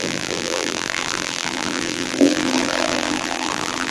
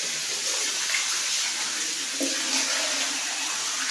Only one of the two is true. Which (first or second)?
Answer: second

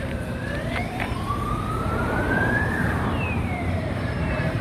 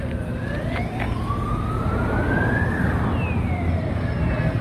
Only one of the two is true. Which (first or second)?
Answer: second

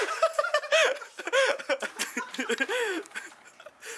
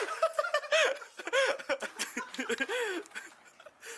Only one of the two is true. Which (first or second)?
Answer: second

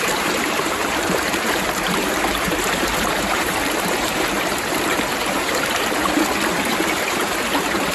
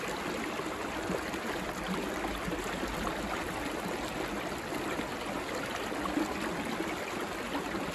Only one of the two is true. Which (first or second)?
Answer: second